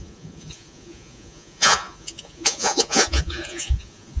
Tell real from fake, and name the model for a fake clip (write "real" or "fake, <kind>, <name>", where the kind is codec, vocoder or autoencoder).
fake, vocoder, Vocos